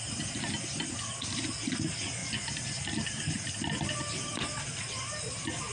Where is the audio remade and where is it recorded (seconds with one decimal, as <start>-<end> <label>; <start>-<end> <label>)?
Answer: 0.0-5.7 recorded